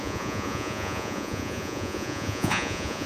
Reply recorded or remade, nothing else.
remade